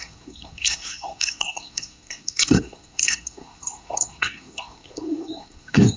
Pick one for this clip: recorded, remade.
remade